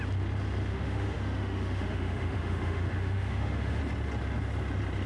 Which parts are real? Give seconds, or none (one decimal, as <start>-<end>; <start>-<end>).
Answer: 0.0-0.7; 3.8-5.1

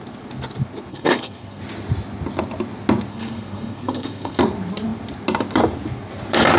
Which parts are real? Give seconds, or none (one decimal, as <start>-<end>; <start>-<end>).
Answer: 0.0-0.9; 1.6-3.1; 4.4-6.6

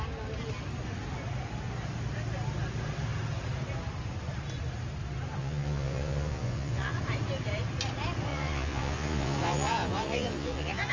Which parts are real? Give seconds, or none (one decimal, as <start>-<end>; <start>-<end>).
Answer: 0.0-5.4; 7.0-8.3

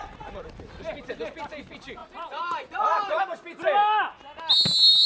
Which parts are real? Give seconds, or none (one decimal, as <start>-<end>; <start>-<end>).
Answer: 0.0-2.0; 3.2-5.1